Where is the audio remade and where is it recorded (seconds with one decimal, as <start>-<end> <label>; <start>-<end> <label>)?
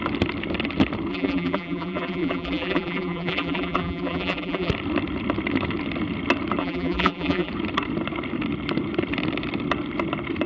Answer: 0.0-1.1 recorded; 1.1-4.7 remade; 4.7-6.6 recorded; 6.6-7.5 remade; 7.5-10.5 recorded